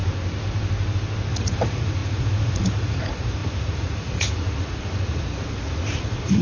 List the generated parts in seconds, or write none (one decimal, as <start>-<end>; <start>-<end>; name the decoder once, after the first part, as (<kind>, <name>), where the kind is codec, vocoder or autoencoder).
1.3-6.4 (vocoder, Vocos)